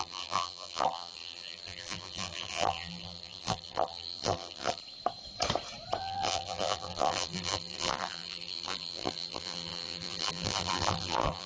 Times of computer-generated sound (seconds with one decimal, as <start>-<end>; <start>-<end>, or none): 0.0-4.8; 6.0-11.5